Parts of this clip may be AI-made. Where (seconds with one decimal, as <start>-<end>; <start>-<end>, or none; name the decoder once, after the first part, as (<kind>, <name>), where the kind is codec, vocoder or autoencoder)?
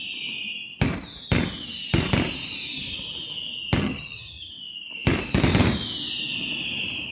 3.8-4.5 (vocoder, HiFi-GAN)